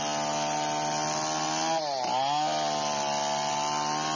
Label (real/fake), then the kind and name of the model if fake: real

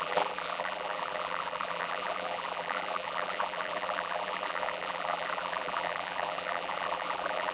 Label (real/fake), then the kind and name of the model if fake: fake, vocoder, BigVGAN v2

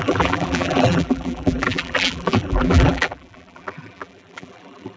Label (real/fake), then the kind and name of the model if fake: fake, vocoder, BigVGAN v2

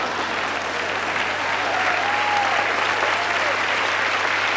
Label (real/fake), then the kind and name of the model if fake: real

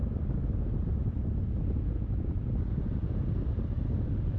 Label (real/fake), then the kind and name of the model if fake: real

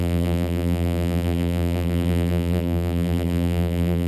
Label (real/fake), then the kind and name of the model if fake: fake, vocoder, BigVGAN v2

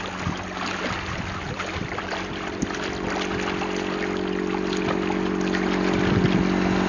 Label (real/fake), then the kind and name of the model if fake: real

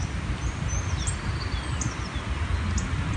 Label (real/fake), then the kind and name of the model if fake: real